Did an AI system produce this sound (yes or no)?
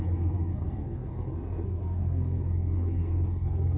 yes